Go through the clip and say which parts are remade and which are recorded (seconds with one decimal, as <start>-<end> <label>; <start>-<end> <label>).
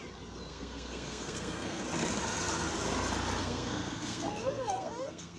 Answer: 0.0-0.5 recorded; 0.5-1.8 remade; 1.8-3.4 recorded; 3.4-5.4 remade